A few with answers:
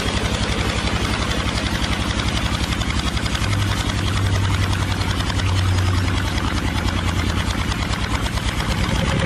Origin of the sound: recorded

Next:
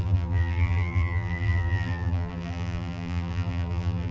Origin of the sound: remade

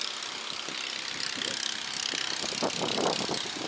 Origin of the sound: remade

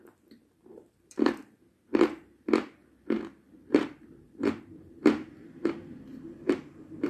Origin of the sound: remade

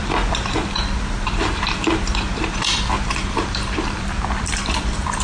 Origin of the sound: remade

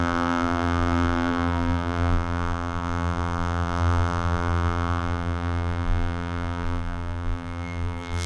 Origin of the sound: remade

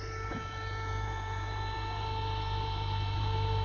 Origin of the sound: remade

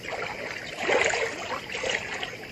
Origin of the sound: recorded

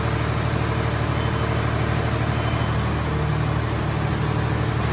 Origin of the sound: recorded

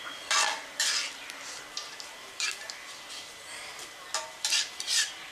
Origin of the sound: remade